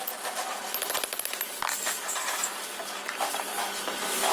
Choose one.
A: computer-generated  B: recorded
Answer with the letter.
B